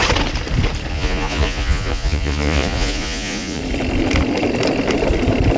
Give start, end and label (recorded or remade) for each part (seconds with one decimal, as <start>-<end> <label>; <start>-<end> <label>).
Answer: 0.0-0.9 recorded; 0.9-3.6 remade; 3.6-5.6 recorded